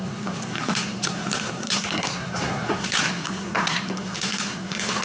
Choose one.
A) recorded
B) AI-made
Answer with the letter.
B